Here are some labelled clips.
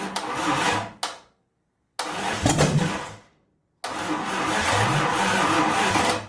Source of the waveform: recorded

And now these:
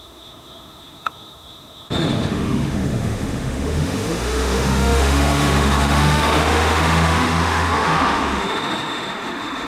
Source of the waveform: remade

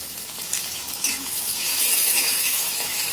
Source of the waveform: remade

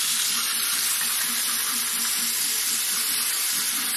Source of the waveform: recorded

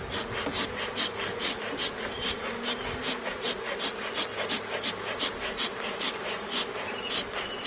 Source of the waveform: recorded